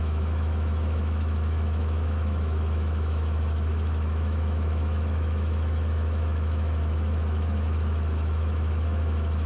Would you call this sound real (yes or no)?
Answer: no